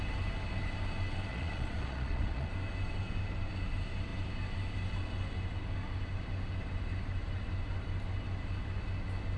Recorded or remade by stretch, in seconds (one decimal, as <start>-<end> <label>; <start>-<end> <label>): 0.0-1.3 recorded; 1.3-2.5 remade; 2.5-9.4 recorded